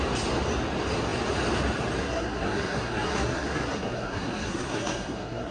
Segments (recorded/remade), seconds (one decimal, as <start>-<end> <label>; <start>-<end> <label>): 0.0-2.0 recorded; 2.0-5.5 remade